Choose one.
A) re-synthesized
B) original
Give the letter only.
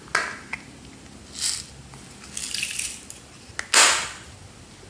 B